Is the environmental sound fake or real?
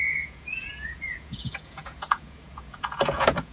fake